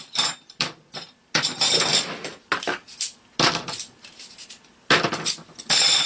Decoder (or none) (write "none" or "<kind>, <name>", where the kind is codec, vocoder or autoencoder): none